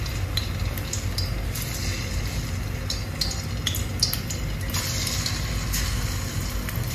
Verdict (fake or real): real